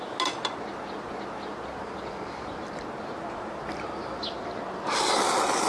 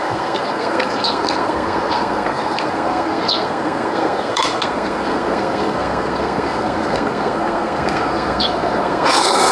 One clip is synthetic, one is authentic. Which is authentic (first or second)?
first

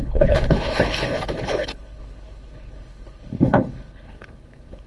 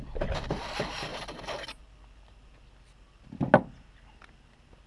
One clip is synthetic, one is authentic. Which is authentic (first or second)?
second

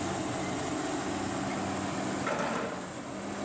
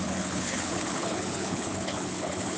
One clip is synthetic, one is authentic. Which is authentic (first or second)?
first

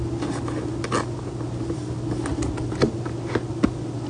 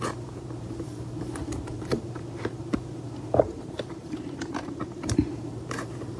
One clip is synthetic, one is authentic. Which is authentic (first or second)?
first